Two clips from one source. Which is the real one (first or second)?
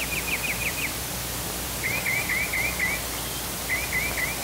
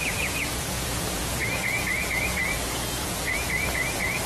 first